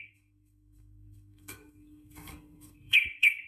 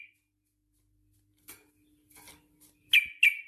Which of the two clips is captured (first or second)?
second